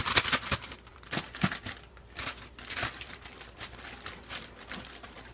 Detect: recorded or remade remade